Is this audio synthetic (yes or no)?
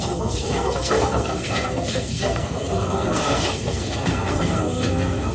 yes